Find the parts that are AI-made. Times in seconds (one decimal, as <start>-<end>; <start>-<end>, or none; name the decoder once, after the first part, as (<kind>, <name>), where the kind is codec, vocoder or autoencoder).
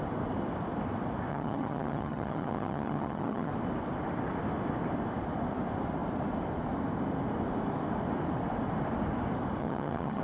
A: 1.3-3.5 (vocoder, HiFi-GAN); 9.6-10.2